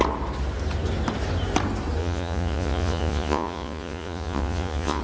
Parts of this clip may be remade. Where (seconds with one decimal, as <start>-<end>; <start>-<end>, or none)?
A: 2.0-5.0